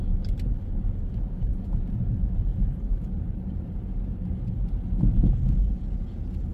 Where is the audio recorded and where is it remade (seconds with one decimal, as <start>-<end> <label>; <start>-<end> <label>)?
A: 0.0-2.5 recorded; 2.5-4.7 remade; 4.7-6.5 recorded